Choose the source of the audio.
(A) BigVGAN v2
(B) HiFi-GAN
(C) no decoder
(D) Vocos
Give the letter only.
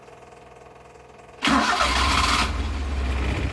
C